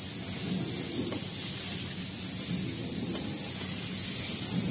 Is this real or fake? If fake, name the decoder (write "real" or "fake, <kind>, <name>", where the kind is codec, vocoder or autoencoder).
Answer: real